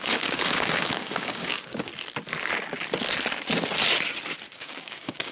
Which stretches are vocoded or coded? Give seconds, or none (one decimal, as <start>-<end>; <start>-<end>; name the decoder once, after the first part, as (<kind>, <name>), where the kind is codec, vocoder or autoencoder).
0.0-1.9 (codec, DAC); 4.5-5.3